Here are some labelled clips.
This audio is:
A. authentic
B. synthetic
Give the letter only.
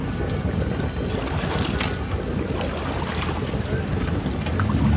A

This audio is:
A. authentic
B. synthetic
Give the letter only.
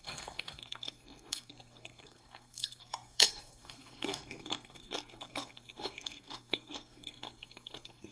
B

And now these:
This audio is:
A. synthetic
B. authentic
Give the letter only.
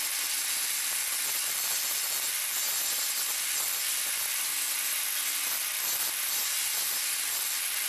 B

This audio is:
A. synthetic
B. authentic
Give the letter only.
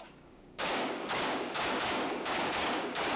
A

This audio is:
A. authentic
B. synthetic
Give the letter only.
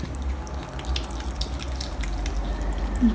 A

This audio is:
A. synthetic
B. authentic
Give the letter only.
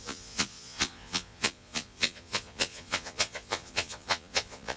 A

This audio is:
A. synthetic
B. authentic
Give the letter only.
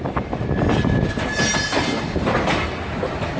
B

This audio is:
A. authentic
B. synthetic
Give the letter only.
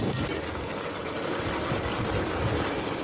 A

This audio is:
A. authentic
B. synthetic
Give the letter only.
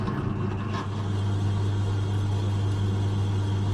A